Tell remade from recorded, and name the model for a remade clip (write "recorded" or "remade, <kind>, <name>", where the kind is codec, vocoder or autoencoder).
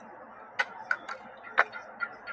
recorded